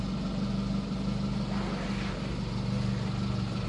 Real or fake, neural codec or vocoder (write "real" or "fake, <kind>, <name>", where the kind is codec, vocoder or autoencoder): real